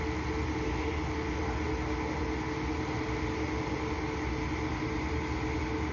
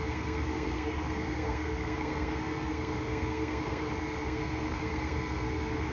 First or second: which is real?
first